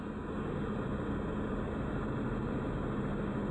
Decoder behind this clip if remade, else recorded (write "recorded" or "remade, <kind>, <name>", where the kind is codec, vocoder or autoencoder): recorded